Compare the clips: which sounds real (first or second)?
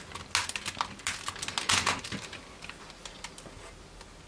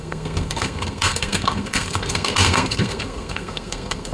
first